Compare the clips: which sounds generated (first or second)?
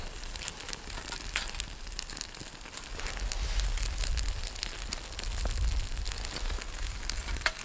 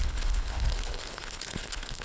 second